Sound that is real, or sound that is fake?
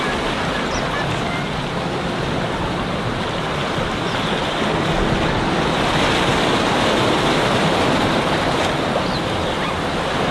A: real